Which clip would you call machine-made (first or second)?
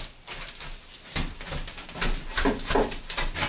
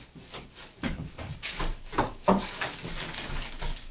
second